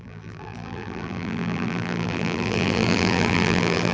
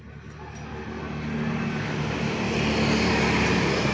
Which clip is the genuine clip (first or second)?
second